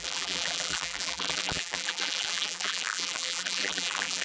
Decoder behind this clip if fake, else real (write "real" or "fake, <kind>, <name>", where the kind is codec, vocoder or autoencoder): fake, vocoder, BigVGAN v2